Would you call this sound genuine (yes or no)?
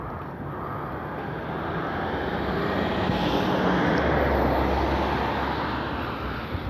yes